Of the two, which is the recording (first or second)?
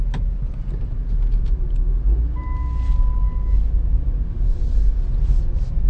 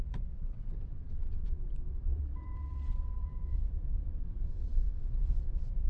first